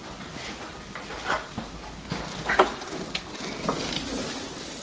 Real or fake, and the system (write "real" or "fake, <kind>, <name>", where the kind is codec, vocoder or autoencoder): real